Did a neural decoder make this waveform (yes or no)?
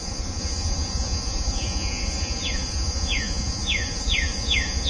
yes